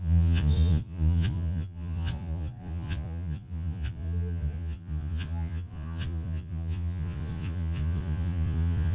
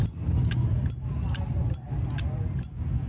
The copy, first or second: first